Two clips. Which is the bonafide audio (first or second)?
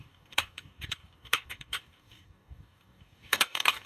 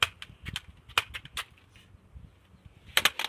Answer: second